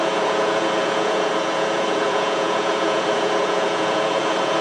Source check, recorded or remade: remade